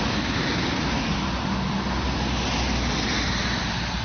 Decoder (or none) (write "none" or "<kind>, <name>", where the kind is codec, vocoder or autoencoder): none